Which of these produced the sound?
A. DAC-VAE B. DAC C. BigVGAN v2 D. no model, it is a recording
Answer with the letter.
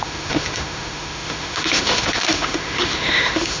A